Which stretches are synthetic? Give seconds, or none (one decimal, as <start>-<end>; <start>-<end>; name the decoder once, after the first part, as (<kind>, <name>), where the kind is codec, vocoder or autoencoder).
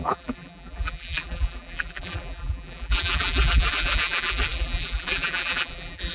0.0-6.1 (vocoder, BigVGAN v2)